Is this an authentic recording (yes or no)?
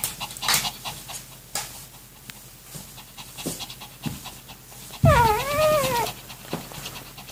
yes